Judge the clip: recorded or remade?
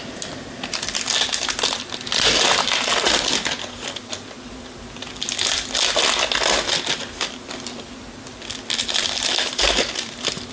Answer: recorded